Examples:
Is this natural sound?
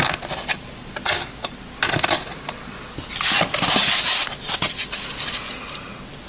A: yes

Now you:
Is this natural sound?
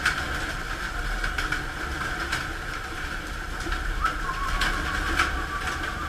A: yes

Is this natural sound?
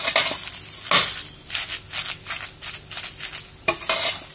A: yes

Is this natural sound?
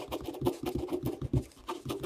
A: yes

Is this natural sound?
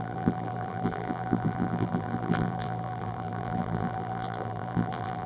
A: no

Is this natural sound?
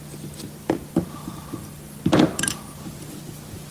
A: yes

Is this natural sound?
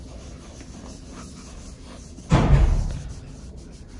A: yes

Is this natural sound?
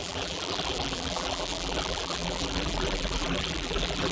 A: no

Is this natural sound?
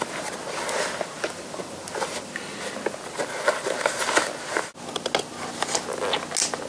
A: yes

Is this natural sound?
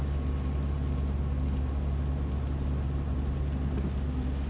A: yes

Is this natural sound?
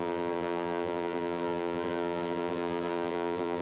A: no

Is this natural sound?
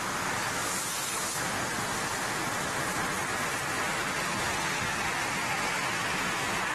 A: yes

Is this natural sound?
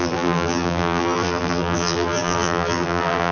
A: no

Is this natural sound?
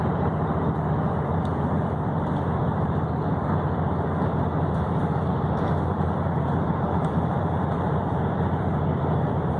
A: no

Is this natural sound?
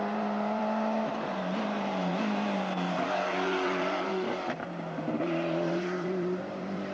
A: no